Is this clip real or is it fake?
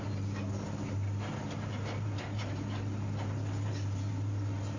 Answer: real